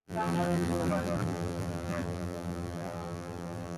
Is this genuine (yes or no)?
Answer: no